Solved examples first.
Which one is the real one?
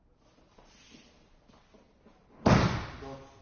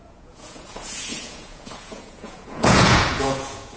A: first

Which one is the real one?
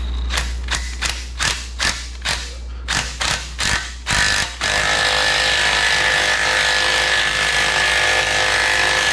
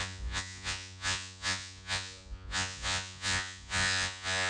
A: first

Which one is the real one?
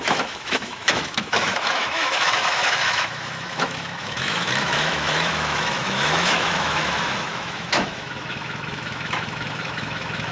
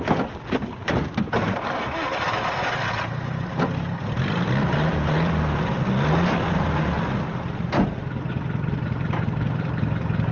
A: second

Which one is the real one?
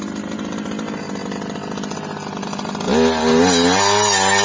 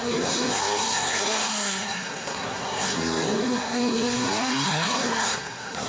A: first